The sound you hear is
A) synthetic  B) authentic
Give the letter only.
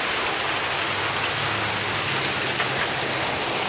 B